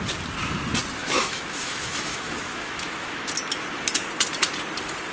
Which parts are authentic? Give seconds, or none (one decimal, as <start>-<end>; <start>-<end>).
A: 0.0-1.0; 3.3-5.1